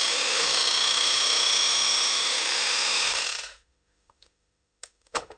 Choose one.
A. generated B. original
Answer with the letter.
A